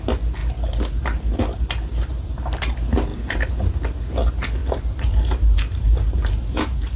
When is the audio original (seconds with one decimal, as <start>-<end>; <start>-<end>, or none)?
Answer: 0.0-2.1; 2.7-3.1; 3.7-4.6